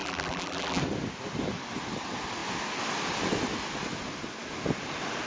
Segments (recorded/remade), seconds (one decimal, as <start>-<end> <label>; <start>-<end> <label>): 0.0-0.8 remade; 0.8-5.3 recorded